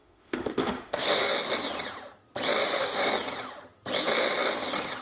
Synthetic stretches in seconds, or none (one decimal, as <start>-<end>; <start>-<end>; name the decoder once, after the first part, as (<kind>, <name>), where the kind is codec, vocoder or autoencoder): 0.0-1.3 (autoencoder, DAC-VAE); 2.6-3.1